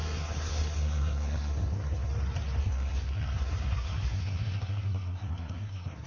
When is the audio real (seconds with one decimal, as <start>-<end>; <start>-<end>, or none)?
2.1-2.6